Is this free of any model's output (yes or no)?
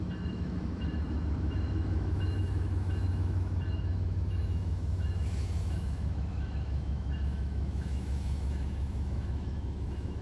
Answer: no